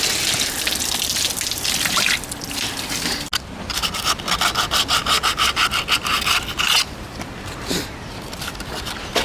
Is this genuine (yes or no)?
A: yes